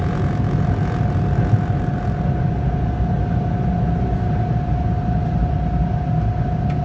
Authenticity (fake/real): real